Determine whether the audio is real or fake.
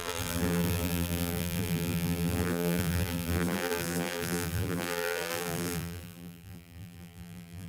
fake